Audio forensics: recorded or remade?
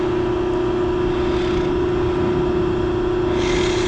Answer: recorded